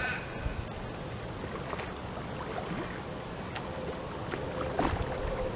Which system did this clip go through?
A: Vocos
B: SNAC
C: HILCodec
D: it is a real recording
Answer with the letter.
D